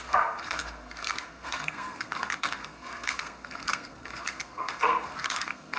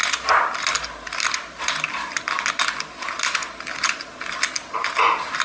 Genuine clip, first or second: second